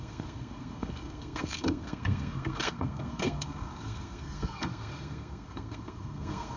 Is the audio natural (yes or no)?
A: no